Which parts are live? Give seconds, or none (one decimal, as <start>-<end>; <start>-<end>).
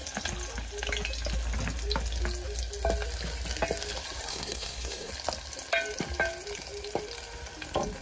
0.0-4.3; 5.1-8.0